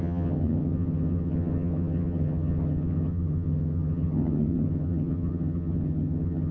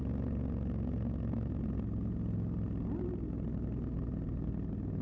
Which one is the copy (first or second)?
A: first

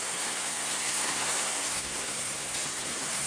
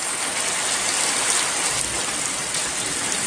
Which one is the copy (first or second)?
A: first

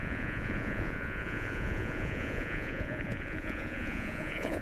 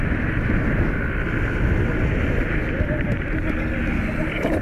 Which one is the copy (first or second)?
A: first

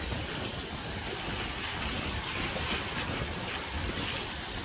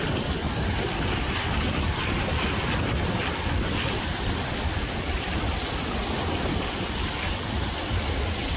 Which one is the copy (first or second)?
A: second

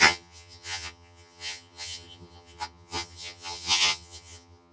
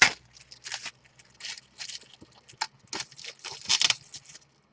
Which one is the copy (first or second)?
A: first